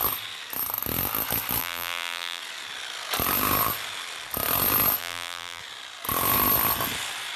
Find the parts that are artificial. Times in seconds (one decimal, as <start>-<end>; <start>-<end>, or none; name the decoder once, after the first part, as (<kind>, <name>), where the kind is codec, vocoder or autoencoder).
1.6-2.4 (vocoder, BigVGAN v2); 5.0-5.6